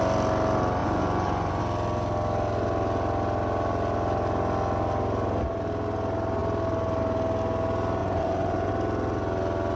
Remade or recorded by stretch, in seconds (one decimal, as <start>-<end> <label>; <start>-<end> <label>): 0.0-0.8 recorded; 0.8-1.6 remade; 1.6-8.0 recorded; 8.0-8.7 remade; 8.7-9.8 recorded

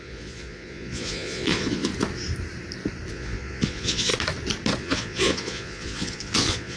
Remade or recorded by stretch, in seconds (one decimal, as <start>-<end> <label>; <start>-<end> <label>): 0.0-1.9 remade; 1.9-3.1 recorded; 3.1-4.1 remade; 4.1-4.8 recorded; 4.8-6.8 remade

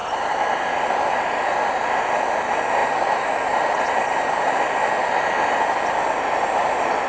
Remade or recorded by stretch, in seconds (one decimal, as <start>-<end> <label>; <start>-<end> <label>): 0.0-7.1 recorded

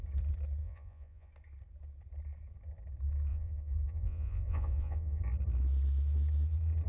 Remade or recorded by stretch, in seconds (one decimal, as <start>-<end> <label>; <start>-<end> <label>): 0.0-0.6 recorded; 0.6-1.3 remade; 1.3-3.3 recorded; 3.3-5.2 remade; 5.2-6.9 recorded

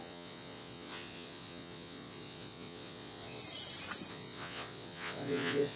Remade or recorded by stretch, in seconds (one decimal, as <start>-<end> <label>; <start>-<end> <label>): 0.0-3.4 remade; 3.4-4.1 recorded; 4.1-5.8 remade

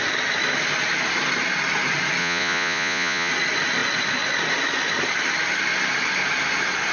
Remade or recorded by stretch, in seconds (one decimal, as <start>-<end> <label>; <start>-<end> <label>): 0.0-2.2 recorded; 2.2-3.3 remade; 3.3-6.9 recorded

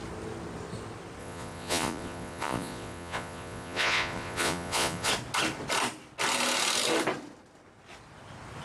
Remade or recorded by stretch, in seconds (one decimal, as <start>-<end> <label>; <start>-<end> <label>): 0.0-1.2 recorded; 1.2-5.1 remade; 5.1-8.6 recorded

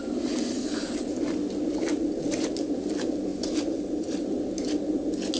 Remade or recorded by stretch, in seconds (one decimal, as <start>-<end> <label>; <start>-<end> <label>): 0.0-5.4 recorded